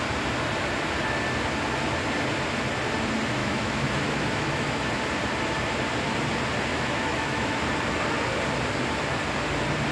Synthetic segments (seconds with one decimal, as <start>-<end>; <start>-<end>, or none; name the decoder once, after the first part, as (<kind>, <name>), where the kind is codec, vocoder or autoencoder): 3.4-4.8 (autoencoder, DAC-VAE); 6.7-7.6